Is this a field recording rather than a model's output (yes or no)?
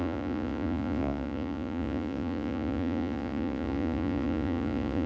no